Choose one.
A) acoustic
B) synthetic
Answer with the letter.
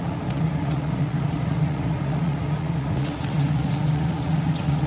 B